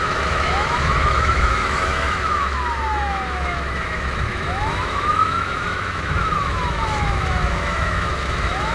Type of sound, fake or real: fake